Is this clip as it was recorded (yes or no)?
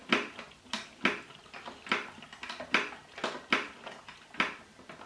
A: yes